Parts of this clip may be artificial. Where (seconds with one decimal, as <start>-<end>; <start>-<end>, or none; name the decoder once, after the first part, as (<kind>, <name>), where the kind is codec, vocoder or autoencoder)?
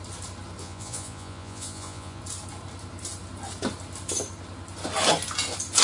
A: 0.6-2.2 (vocoder, Vocos)